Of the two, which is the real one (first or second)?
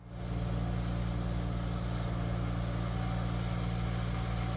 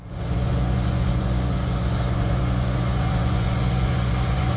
first